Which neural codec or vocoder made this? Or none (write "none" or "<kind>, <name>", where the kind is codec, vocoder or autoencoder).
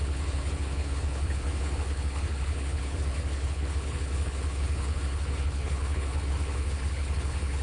codec, HILCodec